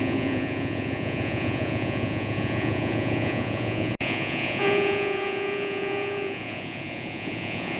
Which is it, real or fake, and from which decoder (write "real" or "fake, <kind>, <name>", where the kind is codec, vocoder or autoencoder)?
fake, vocoder, Vocos